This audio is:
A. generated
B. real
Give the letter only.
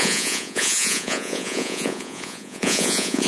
A